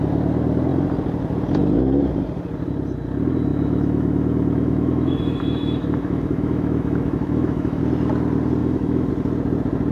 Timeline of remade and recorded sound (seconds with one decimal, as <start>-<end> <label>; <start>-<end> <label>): 0.0-3.5 recorded; 3.5-7.8 remade; 7.8-8.6 recorded; 8.6-9.1 remade; 9.1-9.9 recorded